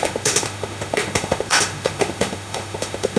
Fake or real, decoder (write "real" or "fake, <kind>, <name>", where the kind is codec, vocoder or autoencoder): fake, autoencoder, DAC-VAE